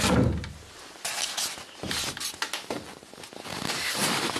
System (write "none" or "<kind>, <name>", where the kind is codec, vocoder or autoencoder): none